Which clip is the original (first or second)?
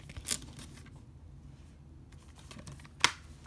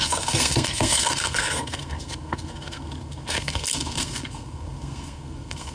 first